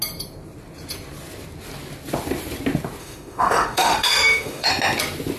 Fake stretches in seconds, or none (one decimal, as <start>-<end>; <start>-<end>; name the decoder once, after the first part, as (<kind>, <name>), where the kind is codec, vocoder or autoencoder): 3.0-4.7 (autoencoder, DAC-VAE)